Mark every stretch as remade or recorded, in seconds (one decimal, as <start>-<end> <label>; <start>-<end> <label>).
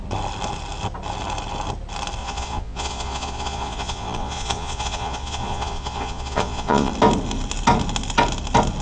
0.0-2.2 recorded; 2.2-6.9 remade; 6.9-8.8 recorded